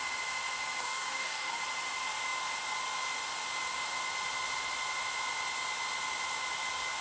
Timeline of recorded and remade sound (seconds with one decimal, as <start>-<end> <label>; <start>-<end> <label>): 0.0-0.8 recorded; 0.8-1.6 remade; 1.6-7.0 recorded